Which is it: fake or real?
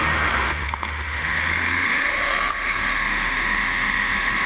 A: fake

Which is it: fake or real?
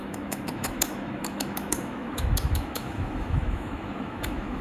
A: fake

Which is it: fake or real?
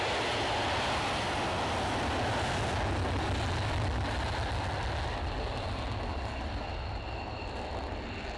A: real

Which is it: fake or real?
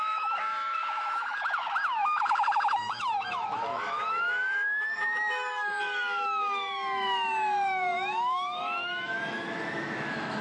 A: fake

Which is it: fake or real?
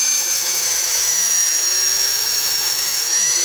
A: fake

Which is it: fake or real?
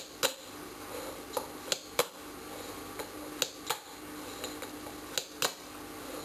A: real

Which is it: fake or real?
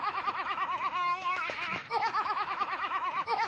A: fake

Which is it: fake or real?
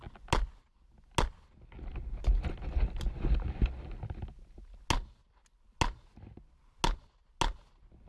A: real